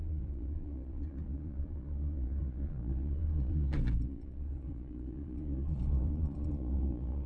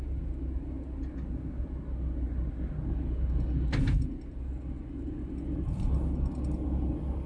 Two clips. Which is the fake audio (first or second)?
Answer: first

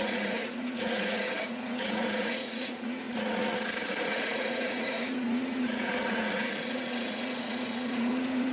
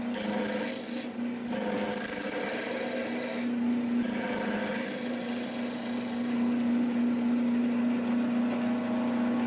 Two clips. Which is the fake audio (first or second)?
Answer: first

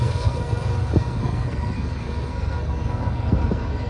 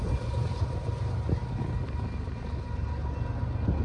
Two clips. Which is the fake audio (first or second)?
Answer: first